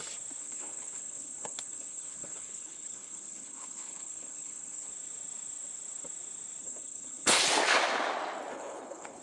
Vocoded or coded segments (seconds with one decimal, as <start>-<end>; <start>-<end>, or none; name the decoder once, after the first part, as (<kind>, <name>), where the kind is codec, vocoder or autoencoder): 0.4-4.9 (codec, HILCodec); 6.6-7.4; 8.5-9.2